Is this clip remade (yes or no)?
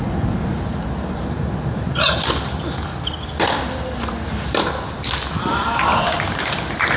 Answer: no